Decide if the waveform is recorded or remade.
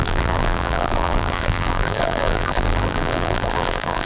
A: remade